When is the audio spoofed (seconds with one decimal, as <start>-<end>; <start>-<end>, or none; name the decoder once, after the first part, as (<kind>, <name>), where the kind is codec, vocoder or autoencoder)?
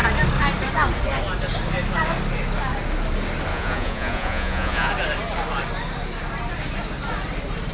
3.5-4.9 (vocoder, Vocos)